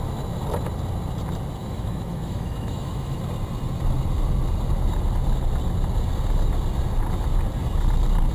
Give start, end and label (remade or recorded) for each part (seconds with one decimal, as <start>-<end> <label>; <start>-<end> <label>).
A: 0.0-1.6 recorded; 1.6-3.2 remade; 3.2-8.3 recorded